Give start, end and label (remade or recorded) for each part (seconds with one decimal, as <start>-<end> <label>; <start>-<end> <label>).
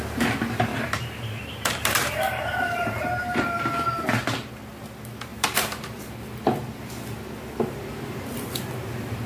0.0-0.7 recorded; 0.7-4.0 remade; 4.0-5.3 recorded; 5.3-6.0 remade; 6.0-9.3 recorded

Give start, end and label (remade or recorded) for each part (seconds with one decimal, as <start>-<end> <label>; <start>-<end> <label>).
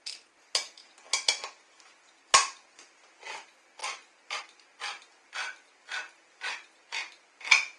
0.0-7.8 recorded